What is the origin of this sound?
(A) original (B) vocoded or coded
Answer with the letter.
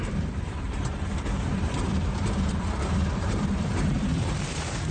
B